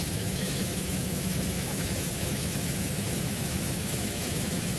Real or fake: fake